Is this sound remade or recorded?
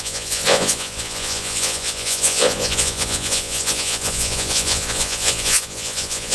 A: remade